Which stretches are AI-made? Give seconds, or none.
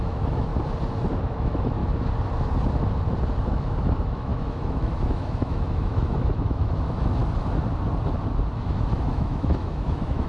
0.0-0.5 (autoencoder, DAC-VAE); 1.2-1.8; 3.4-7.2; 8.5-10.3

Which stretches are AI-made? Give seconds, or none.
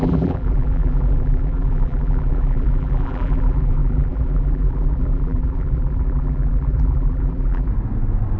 0.0-7.7 (vocoder, BigVGAN v2)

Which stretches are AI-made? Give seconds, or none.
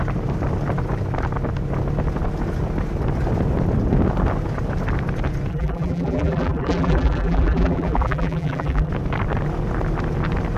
5.5-8.9 (vocoder, BigVGAN v2)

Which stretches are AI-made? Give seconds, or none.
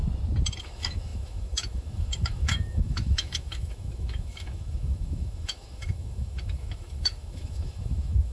0.6-8.3 (autoencoder, DAC-VAE)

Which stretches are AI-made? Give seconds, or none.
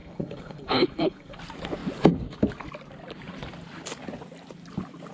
0.0-1.4 (codec, HILCodec)